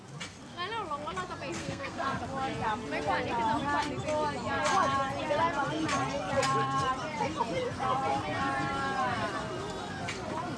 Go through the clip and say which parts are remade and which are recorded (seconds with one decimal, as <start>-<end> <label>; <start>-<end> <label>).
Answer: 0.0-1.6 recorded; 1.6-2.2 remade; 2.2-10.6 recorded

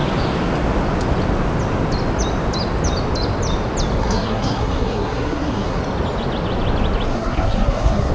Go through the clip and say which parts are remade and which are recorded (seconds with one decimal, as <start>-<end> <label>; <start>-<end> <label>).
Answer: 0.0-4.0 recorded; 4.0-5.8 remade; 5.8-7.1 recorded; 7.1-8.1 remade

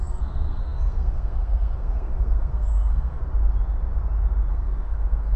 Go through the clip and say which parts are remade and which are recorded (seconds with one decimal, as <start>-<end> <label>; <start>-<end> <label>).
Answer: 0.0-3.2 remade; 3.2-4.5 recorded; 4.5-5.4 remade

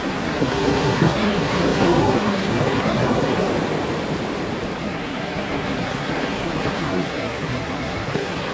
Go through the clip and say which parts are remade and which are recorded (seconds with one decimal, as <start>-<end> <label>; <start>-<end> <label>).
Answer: 0.0-3.5 remade; 3.5-4.8 recorded; 4.8-8.5 remade

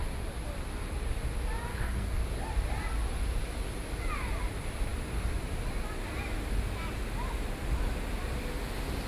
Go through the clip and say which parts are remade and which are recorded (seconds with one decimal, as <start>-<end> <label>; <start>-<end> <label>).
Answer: 0.0-1.7 recorded; 1.7-2.2 remade; 2.2-9.1 recorded

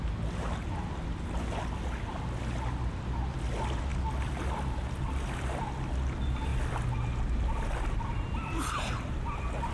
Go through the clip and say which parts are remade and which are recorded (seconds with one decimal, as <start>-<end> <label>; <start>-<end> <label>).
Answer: 0.0-9.7 recorded

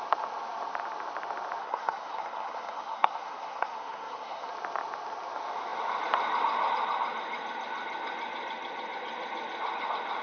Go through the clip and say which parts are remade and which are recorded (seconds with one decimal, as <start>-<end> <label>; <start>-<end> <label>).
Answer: 0.0-1.6 recorded; 1.6-4.5 remade; 4.5-10.2 recorded